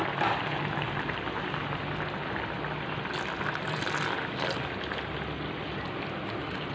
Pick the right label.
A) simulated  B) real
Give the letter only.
A